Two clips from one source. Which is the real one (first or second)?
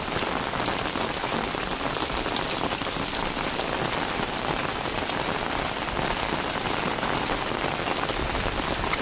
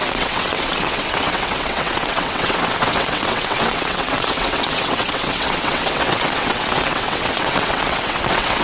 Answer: first